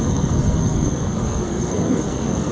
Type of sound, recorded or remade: remade